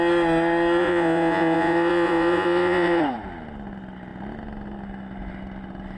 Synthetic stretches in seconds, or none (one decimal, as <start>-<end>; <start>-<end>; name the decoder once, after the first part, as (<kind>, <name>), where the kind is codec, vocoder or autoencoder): 0.8-3.0 (vocoder, Vocos)